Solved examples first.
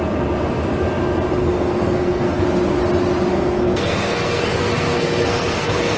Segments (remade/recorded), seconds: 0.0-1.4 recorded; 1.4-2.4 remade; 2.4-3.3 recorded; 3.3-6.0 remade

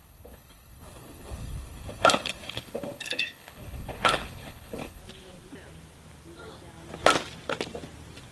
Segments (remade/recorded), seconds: 0.0-5.0 remade; 5.0-8.3 recorded

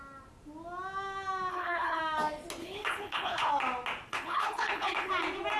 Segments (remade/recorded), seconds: 0.0-1.5 recorded; 1.5-2.0 remade; 2.0-2.6 recorded; 2.6-3.5 remade; 3.5-4.1 recorded; 4.1-5.1 remade; 5.1-5.6 recorded